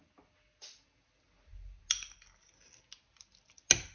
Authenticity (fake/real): real